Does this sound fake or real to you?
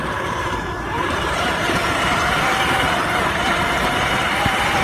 fake